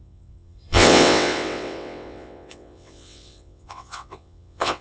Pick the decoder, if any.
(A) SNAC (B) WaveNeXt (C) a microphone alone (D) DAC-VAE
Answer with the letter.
B